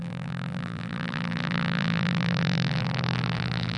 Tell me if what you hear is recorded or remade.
remade